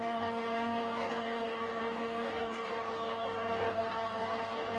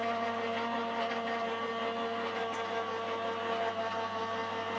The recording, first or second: second